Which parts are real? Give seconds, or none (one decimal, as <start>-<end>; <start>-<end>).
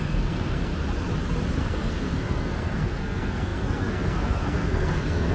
0.7-1.6